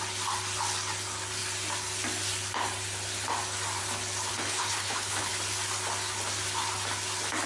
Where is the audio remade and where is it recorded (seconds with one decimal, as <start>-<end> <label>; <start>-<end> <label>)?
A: 0.0-4.3 recorded; 4.3-5.3 remade; 5.3-7.5 recorded

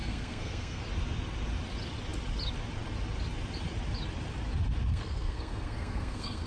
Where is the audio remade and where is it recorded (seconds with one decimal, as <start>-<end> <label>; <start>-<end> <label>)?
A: 0.0-0.8 remade; 0.8-4.9 recorded; 4.9-6.5 remade

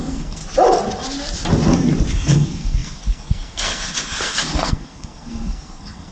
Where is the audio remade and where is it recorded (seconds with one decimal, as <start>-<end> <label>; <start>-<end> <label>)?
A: 0.0-0.4 remade; 0.4-2.1 recorded; 2.1-6.1 remade

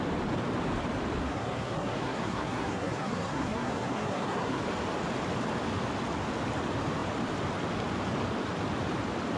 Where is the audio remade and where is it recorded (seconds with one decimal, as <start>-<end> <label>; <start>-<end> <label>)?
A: 0.0-1.2 recorded; 1.2-4.6 remade; 4.6-9.4 recorded